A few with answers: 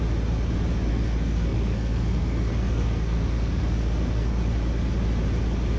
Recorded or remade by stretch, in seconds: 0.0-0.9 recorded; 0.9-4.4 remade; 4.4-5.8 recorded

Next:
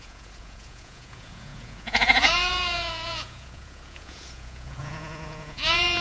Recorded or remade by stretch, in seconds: 0.0-6.0 remade

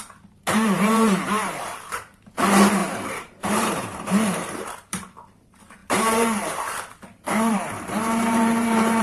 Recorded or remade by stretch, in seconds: 0.0-9.0 remade

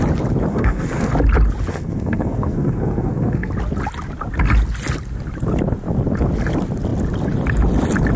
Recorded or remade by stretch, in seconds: 0.0-0.5 recorded; 0.5-1.1 remade; 1.1-1.7 recorded; 1.7-3.5 remade; 3.5-8.2 recorded